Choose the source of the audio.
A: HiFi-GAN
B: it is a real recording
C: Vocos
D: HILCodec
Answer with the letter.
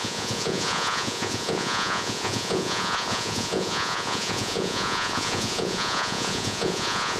C